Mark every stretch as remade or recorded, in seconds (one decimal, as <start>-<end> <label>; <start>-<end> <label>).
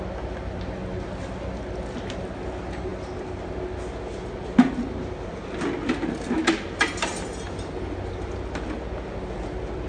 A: 0.0-9.9 recorded